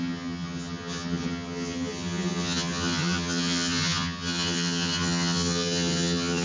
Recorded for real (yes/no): no